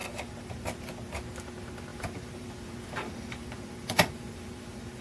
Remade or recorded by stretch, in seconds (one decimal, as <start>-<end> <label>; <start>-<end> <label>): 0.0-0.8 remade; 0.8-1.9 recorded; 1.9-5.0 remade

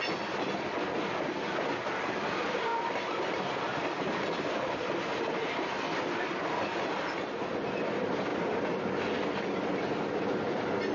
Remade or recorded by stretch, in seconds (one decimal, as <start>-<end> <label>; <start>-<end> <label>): 0.0-2.7 recorded; 2.7-6.8 remade; 6.8-10.9 recorded

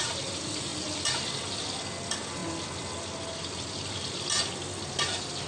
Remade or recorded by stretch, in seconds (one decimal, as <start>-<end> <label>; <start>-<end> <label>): 0.0-5.5 recorded

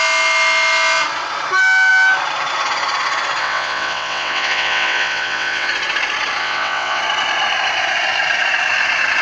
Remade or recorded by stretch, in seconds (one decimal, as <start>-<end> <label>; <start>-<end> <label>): 0.0-3.4 recorded; 3.4-5.7 remade; 5.7-6.4 recorded; 6.4-7.0 remade; 7.0-9.2 recorded

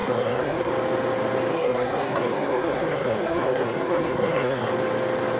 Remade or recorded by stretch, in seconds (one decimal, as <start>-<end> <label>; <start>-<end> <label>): 0.0-0.7 remade; 0.7-1.5 recorded; 1.5-4.7 remade; 4.7-5.4 recorded

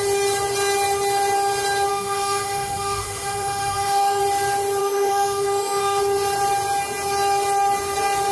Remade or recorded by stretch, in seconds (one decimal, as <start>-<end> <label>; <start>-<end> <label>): 0.0-1.9 recorded; 1.9-4.2 remade; 4.2-4.8 recorded; 4.8-6.0 remade; 6.0-8.3 recorded